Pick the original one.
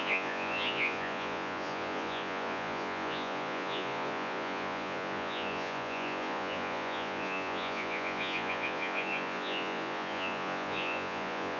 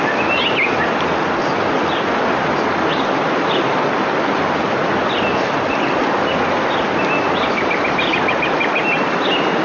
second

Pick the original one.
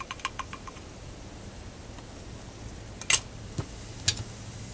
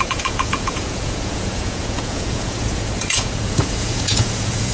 first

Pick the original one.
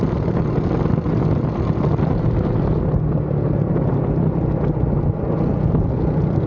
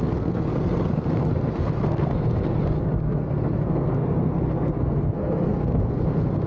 first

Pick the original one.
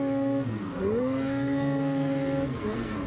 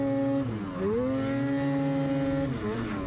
second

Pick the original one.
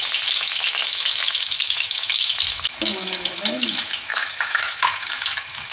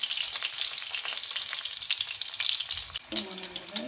second